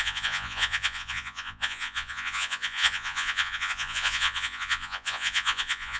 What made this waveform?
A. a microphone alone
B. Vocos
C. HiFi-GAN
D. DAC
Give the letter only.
B